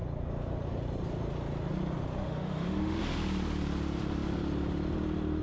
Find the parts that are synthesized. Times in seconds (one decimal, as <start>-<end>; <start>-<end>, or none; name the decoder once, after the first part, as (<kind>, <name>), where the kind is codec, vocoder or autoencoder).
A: 2.2-3.0 (autoencoder, DAC-VAE)